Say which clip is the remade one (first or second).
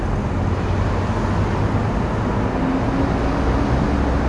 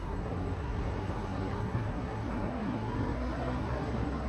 second